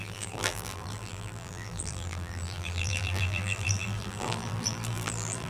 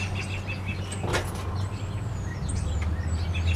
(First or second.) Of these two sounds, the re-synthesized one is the first